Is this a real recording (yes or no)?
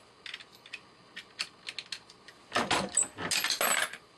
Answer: yes